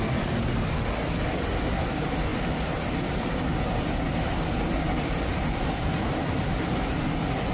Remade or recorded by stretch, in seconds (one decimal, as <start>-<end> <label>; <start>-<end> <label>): 0.0-7.5 recorded